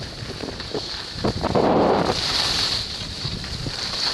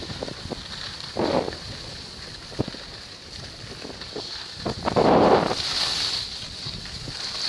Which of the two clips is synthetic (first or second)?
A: first